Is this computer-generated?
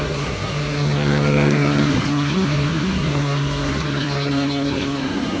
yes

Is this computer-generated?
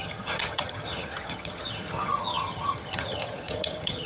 yes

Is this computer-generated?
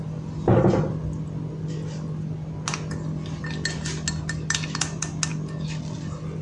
no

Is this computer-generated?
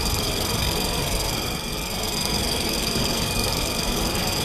yes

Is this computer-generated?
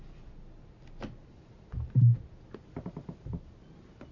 no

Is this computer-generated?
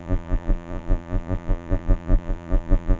yes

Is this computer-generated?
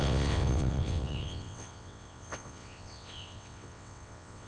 yes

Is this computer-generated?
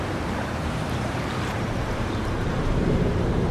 yes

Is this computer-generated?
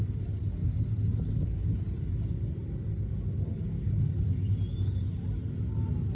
no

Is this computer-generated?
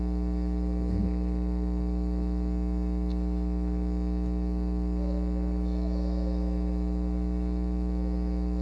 yes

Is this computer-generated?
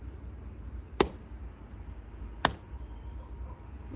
no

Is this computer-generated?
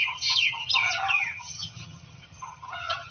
yes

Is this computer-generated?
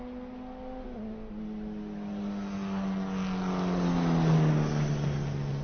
no